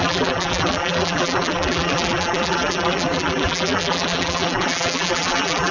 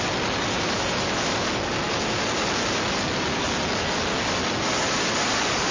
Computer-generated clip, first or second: first